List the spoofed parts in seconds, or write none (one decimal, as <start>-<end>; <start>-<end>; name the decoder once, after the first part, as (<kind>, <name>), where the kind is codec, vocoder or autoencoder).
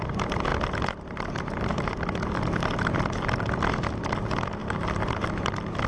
none